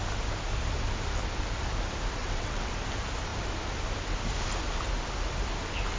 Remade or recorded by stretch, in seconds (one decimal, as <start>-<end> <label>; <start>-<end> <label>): 0.0-2.2 recorded; 2.2-2.7 remade; 2.7-6.0 recorded